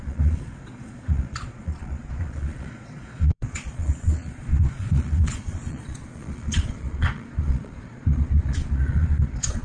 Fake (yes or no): yes